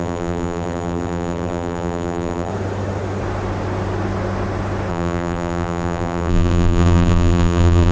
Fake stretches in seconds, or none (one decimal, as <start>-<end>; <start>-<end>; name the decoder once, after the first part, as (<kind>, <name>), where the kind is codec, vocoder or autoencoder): 0.0-2.5 (vocoder, BigVGAN v2); 4.9-7.9